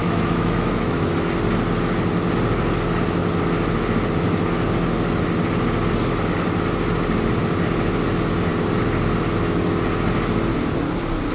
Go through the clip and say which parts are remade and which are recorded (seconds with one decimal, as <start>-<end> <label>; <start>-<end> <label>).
0.0-1.1 remade; 1.1-11.3 recorded